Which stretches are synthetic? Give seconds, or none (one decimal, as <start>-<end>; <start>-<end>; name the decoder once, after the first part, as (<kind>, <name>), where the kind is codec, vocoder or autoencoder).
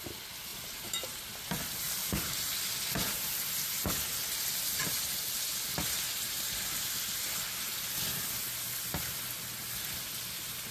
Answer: 0.5-1.2 (vocoder, BigVGAN v2); 2.0-2.7